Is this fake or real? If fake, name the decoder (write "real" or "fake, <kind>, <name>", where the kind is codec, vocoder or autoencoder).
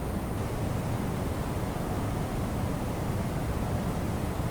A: real